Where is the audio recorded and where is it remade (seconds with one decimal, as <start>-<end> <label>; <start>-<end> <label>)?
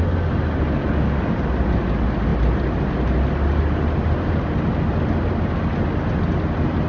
0.0-6.9 recorded